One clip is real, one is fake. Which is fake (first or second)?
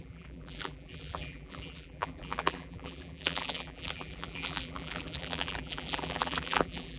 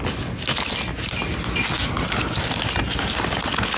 first